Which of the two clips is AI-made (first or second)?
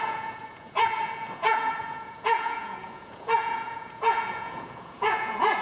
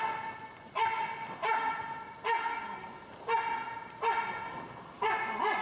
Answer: first